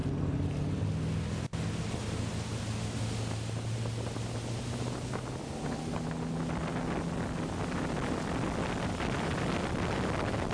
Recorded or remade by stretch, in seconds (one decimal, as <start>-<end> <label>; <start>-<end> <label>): 0.0-10.5 recorded